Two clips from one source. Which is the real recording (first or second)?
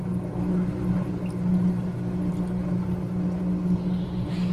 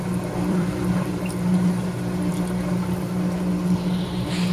first